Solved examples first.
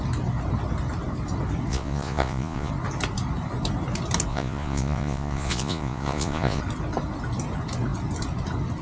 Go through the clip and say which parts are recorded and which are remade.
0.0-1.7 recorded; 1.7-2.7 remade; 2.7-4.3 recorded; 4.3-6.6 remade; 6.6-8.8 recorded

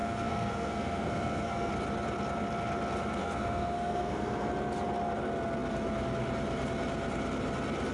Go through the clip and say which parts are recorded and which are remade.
0.0-1.7 remade; 1.7-3.2 recorded; 3.2-4.5 remade; 4.5-7.9 recorded

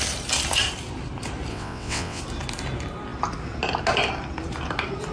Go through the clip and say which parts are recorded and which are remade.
0.0-1.5 recorded; 1.5-2.2 remade; 2.2-5.1 recorded

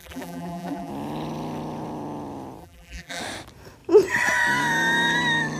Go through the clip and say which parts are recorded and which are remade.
0.0-0.9 remade; 0.9-2.6 recorded; 2.6-3.2 remade; 3.2-5.6 recorded